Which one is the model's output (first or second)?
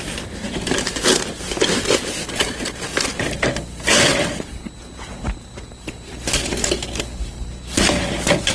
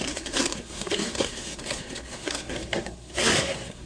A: second